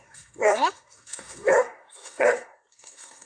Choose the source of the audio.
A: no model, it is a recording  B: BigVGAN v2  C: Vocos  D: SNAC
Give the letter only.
D